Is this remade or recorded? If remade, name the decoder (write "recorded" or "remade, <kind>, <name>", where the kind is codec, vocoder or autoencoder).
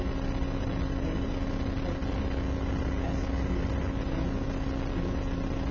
recorded